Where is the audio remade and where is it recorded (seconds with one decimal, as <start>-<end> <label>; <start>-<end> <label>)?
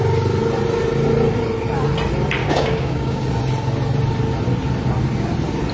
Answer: 0.0-2.4 recorded; 2.4-3.2 remade; 3.2-5.7 recorded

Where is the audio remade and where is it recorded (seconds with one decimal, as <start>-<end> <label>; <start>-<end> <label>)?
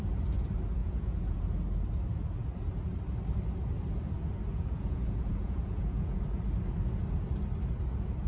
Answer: 0.0-0.8 recorded; 0.8-1.4 remade; 1.4-4.5 recorded; 4.5-6.3 remade; 6.3-8.3 recorded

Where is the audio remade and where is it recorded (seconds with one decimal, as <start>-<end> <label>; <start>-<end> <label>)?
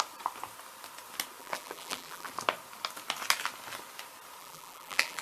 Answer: 0.0-1.4 recorded; 1.4-2.3 remade; 2.3-4.4 recorded; 4.4-5.2 remade